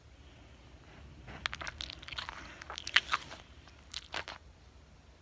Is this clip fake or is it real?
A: real